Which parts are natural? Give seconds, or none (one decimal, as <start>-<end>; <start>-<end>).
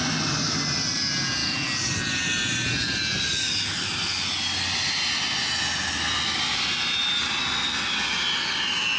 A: 0.0-9.0